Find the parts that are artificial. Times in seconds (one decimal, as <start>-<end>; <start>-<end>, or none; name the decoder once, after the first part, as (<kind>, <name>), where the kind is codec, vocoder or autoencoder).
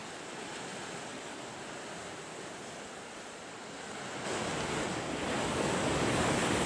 1.1-1.5 (codec, DAC); 5.5-6.7